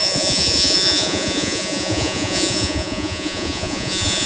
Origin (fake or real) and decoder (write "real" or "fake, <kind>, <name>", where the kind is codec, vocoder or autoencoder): fake, vocoder, Vocos